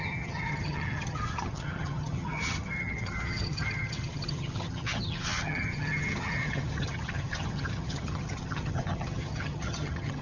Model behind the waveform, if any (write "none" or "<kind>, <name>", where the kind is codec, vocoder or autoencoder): vocoder, HiFi-GAN